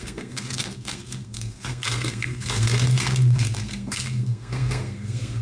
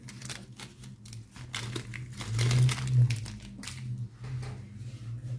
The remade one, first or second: first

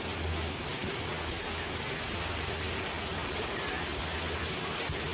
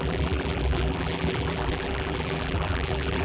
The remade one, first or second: second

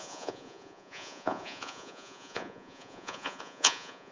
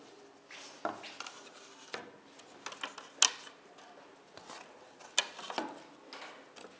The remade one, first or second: first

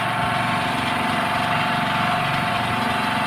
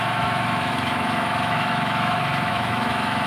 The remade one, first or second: second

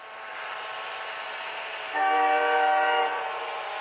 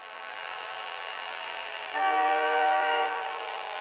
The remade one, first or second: second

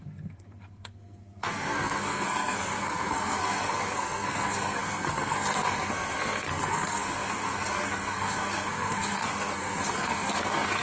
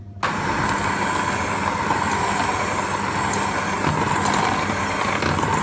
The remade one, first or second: first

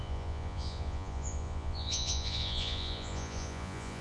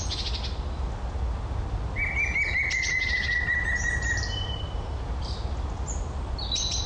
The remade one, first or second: first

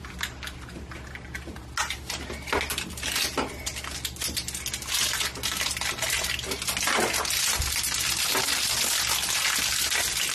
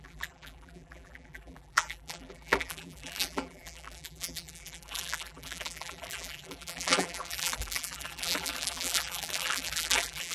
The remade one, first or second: second